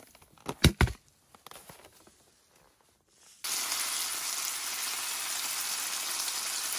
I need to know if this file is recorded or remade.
recorded